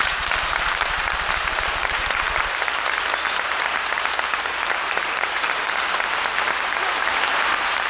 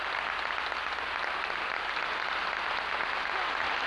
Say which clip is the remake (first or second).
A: first